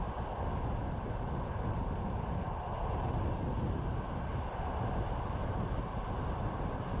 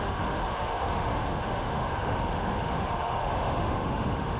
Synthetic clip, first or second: second